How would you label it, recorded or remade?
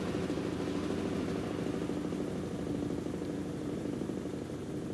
recorded